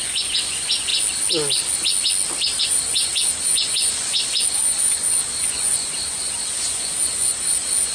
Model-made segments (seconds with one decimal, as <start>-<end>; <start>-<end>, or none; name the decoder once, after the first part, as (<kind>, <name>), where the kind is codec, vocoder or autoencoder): 0.0-0.9 (vocoder, Vocos); 2.6-7.9